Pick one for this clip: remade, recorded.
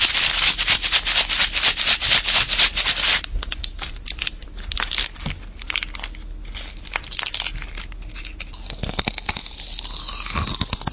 recorded